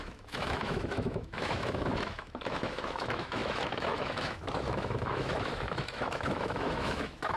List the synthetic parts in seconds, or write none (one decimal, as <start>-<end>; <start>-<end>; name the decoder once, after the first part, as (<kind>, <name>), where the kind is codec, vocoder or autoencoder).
0.0-7.4 (autoencoder, DAC-VAE)